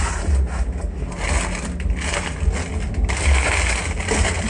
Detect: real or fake real